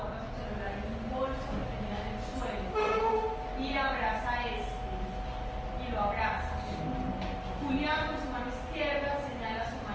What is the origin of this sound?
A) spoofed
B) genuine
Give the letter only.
B